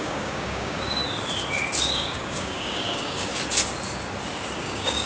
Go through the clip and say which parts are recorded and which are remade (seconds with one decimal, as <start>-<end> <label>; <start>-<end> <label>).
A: 0.0-1.0 remade; 1.0-1.8 recorded; 1.8-3.3 remade; 3.3-4.6 recorded; 4.6-5.1 remade